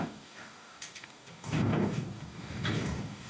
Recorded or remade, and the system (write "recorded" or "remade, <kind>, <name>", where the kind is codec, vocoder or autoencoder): remade, codec, DAC